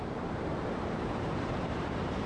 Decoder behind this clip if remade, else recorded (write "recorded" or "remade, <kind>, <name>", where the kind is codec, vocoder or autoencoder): remade, vocoder, BigVGAN v2